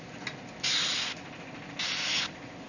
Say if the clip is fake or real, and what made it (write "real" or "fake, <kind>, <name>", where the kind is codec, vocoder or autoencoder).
real